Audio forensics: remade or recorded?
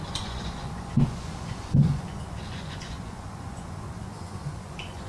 remade